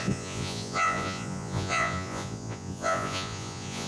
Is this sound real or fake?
fake